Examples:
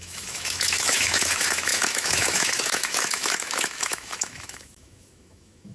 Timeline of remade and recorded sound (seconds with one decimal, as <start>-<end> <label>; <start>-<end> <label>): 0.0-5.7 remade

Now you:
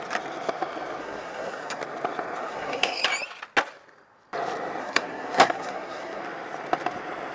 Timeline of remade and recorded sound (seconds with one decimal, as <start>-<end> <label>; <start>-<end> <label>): 0.0-1.0 recorded; 1.0-1.8 remade; 1.8-2.4 recorded; 2.4-3.0 remade; 3.0-4.8 recorded; 4.8-6.2 remade; 6.2-7.3 recorded

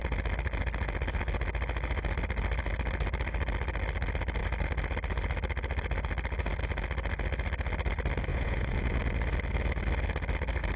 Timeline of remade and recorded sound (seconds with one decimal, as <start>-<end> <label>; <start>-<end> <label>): 0.0-8.3 recorded; 8.3-8.8 remade; 8.8-10.8 recorded

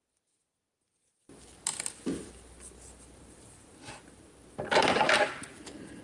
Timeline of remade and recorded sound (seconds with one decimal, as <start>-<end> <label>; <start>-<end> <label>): 0.0-6.0 recorded